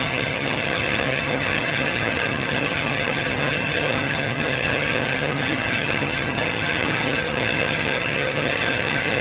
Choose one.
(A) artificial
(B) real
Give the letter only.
A